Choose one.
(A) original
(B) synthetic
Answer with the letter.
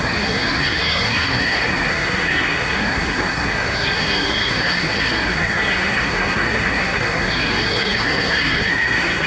B